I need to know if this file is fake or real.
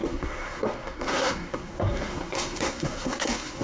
fake